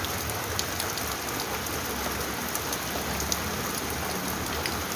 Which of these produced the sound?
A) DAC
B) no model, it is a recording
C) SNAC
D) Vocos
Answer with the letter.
B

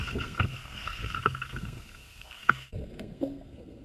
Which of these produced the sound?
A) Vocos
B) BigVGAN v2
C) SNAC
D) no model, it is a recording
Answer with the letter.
C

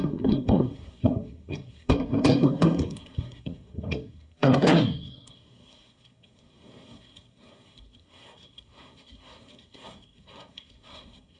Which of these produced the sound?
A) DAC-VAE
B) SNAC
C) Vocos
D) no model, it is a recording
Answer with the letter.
B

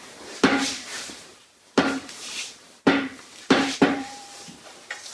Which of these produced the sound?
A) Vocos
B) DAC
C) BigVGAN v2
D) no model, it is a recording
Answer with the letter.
C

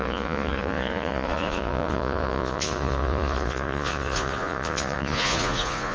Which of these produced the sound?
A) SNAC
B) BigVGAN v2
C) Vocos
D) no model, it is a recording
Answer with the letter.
C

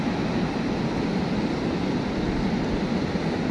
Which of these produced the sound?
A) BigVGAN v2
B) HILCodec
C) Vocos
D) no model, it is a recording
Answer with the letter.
D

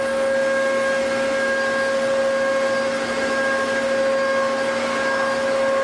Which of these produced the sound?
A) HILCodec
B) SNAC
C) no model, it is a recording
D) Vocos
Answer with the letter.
C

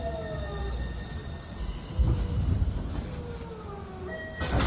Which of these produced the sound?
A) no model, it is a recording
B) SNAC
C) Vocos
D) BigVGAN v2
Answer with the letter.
A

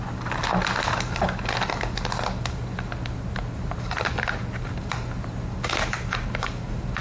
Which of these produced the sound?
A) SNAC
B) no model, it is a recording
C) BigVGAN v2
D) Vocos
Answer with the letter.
B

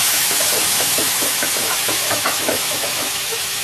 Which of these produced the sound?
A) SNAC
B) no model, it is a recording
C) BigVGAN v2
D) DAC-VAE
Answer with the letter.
D